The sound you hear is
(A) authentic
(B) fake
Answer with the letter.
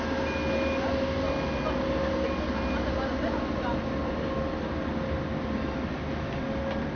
A